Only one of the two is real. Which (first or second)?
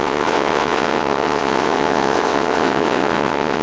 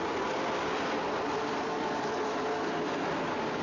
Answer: second